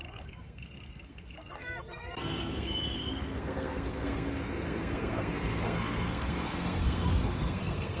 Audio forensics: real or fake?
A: fake